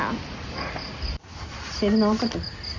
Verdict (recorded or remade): recorded